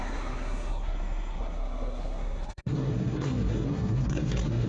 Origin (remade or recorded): remade